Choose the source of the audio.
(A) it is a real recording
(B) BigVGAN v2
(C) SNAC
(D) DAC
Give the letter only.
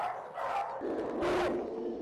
A